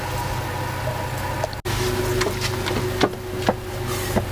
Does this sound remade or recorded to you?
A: recorded